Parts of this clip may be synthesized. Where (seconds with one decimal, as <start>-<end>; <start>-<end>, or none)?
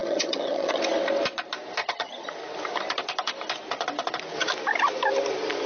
0.0-0.8; 1.8-2.3